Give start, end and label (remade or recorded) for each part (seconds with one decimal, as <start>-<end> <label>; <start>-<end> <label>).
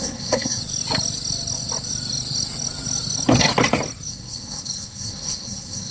0.0-0.6 remade; 0.6-4.1 recorded; 4.1-5.9 remade